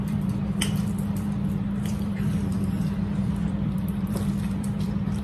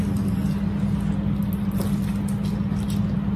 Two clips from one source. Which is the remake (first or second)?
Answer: first